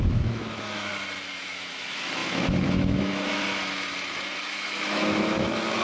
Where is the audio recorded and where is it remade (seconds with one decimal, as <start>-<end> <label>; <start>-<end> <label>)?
0.0-0.9 remade; 0.9-1.4 recorded; 1.4-3.4 remade; 3.4-4.5 recorded; 4.5-5.8 remade